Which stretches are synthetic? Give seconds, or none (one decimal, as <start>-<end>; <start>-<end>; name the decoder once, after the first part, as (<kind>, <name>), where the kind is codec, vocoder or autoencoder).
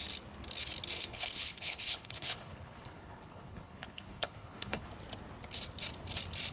1.0-4.9 (codec, HILCodec)